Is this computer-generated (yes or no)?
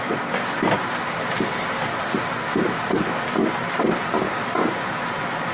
no